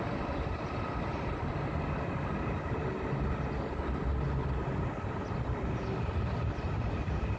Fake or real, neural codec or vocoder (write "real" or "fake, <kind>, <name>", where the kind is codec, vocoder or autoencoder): real